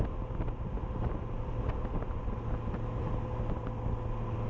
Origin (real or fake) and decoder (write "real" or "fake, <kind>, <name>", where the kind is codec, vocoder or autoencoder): real